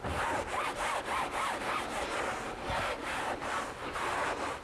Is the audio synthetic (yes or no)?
no